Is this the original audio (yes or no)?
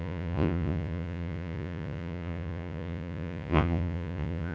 no